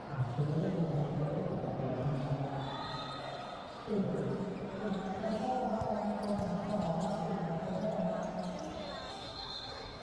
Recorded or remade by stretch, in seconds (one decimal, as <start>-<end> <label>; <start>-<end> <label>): 0.0-9.1 recorded; 9.1-10.0 remade